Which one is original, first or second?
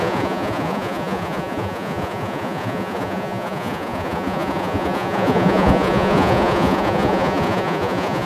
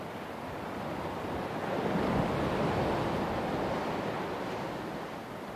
second